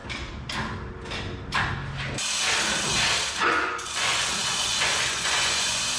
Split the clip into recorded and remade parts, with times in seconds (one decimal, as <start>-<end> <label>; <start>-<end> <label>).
0.0-3.4 recorded; 3.4-6.0 remade

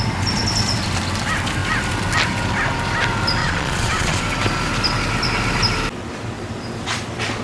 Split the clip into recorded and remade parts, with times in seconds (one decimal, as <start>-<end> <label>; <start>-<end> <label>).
0.0-3.4 recorded; 3.4-4.2 remade; 4.2-7.4 recorded

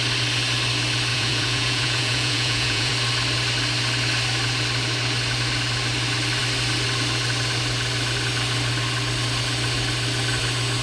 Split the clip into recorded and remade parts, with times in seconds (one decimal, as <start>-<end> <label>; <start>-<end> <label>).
0.0-1.1 recorded; 1.1-2.9 remade; 2.9-10.8 recorded

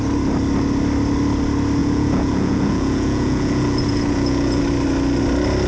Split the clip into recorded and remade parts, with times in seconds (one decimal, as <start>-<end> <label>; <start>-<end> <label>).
0.0-1.8 recorded; 1.8-4.6 remade; 4.6-5.7 recorded

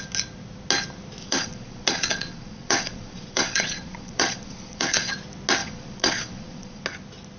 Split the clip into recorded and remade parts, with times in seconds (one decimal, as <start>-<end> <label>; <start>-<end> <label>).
0.0-1.2 recorded; 1.2-5.1 remade; 5.1-5.6 recorded; 5.6-6.8 remade; 6.8-7.4 recorded

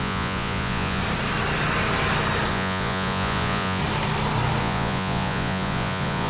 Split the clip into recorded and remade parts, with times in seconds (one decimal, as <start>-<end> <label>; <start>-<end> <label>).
0.0-1.0 remade; 1.0-2.5 recorded; 2.5-3.8 remade; 3.8-4.6 recorded; 4.6-6.3 remade

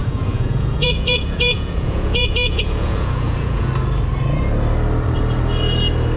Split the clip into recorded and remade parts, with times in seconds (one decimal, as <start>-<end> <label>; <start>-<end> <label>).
0.0-3.7 remade; 3.7-6.2 recorded